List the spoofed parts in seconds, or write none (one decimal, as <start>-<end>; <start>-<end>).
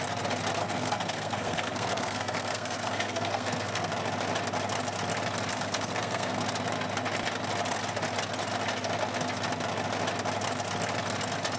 0.6-3.9; 5.5-6.4